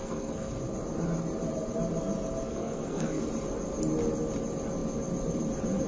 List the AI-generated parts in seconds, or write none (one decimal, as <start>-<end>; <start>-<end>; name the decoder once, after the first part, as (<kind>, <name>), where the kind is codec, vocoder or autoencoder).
0.0-0.5 (codec, SNAC); 2.5-3.2